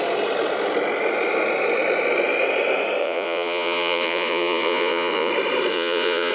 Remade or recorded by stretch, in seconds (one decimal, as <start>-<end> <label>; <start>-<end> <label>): 0.0-3.0 recorded; 3.0-5.3 remade; 5.3-5.7 recorded; 5.7-6.3 remade